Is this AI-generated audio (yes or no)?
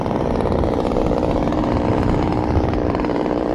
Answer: yes